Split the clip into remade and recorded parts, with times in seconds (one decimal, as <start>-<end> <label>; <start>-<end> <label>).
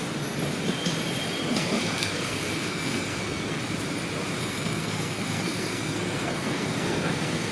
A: 0.0-1.4 recorded; 1.4-3.6 remade; 3.6-4.4 recorded; 4.4-7.5 remade